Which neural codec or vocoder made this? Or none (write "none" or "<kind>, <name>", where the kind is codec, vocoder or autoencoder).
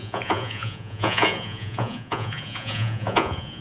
vocoder, Vocos